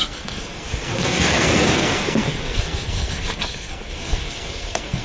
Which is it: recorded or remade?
remade